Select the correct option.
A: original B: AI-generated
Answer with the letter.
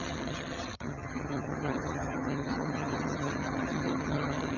B